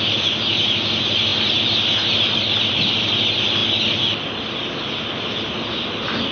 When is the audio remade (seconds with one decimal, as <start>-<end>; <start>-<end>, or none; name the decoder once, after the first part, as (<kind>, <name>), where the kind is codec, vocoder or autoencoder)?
none

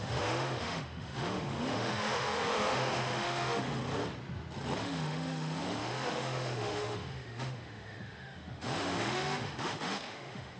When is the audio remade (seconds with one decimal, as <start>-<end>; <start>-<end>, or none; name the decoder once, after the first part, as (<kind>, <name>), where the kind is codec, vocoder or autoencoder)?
0.0-3.8 (autoencoder, DAC-VAE); 4.8-10.6